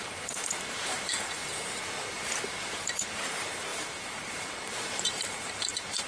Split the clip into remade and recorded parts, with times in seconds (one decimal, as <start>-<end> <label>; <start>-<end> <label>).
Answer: 0.0-1.4 remade; 1.4-2.6 recorded; 2.6-6.1 remade